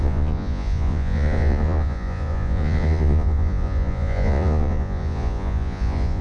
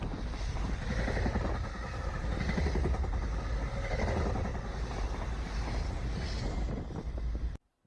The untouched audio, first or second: second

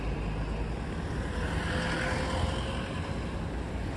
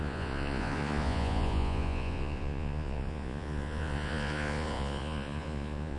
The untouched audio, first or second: first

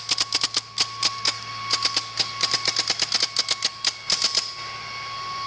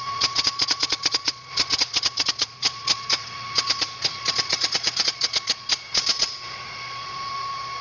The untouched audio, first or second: first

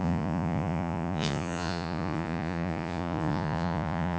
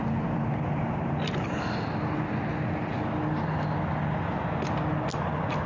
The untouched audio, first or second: second